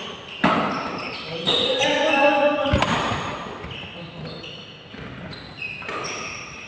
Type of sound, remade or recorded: recorded